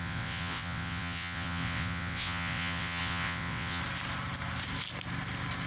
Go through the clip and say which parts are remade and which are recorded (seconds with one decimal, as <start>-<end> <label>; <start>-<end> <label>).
0.0-3.8 remade; 3.8-5.7 recorded